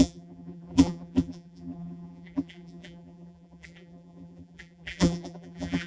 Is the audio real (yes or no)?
no